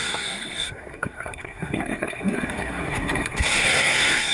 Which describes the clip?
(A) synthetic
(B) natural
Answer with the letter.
A